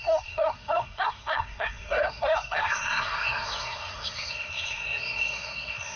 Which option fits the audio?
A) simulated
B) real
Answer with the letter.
A